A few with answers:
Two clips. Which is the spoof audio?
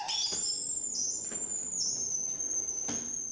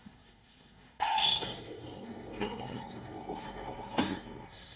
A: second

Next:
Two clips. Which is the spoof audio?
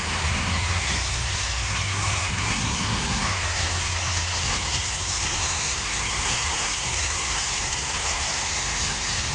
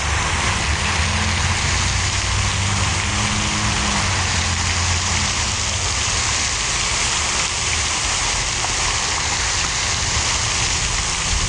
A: first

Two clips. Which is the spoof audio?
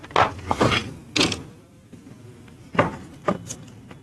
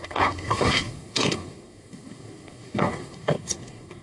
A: second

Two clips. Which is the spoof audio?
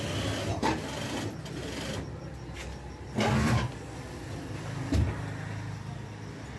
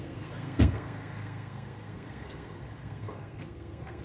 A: second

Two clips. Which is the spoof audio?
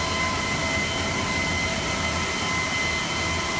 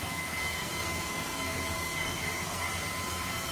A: second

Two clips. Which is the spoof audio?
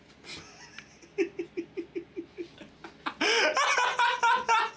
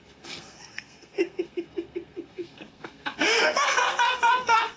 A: second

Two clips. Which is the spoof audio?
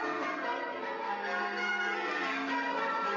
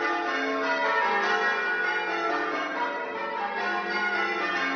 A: first